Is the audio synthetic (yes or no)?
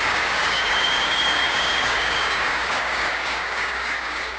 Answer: yes